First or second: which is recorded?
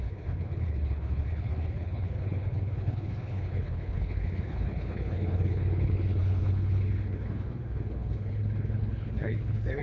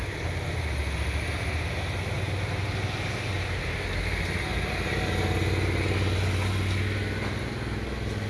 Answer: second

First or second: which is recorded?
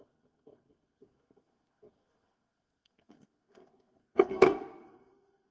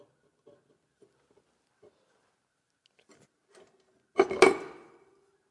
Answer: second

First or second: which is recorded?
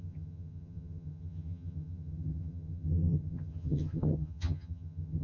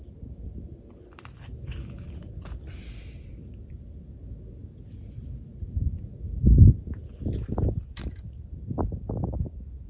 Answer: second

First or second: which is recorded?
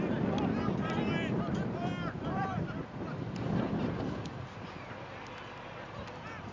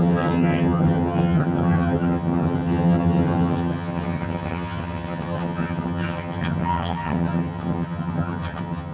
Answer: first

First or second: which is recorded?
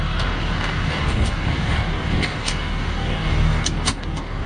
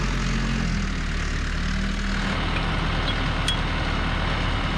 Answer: second